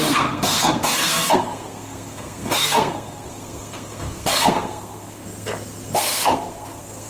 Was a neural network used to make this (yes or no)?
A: yes